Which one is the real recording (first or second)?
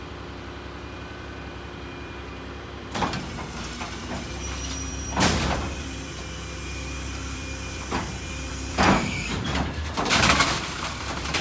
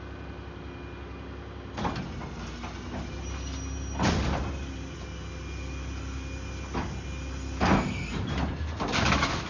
second